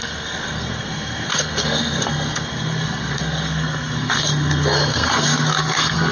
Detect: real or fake fake